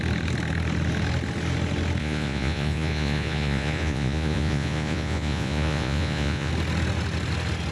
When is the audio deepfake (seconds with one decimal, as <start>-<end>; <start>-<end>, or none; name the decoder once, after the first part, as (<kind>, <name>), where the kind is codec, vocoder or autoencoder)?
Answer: 2.0-6.5 (vocoder, Vocos)